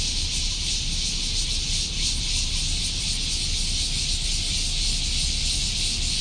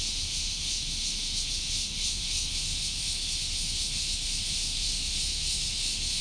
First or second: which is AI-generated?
second